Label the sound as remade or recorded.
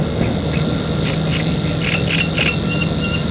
recorded